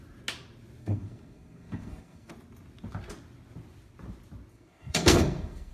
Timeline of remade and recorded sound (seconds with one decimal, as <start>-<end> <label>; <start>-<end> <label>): 0.0-0.8 recorded; 0.8-2.3 remade; 2.3-4.5 recorded; 4.5-5.7 remade